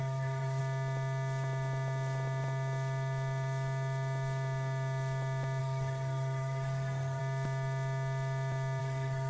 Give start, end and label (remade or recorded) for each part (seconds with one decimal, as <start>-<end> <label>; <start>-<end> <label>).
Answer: 0.0-0.6 remade; 0.6-5.6 recorded; 5.6-7.2 remade; 7.2-8.8 recorded; 8.8-9.3 remade